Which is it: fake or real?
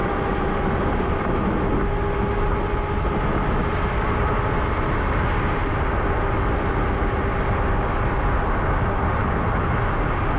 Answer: real